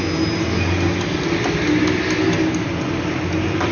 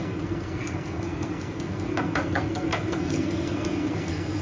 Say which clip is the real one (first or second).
first